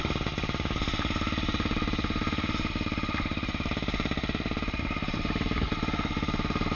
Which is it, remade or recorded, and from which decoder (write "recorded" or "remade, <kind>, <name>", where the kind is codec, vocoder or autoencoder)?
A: remade, vocoder, BigVGAN v2